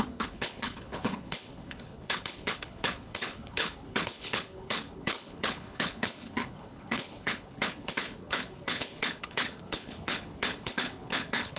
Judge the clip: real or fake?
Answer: fake